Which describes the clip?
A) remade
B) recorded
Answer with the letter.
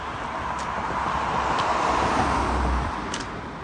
A